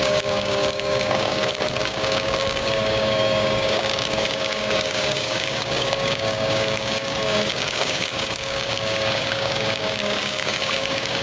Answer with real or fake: fake